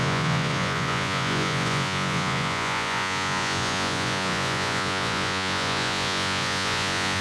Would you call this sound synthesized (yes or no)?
yes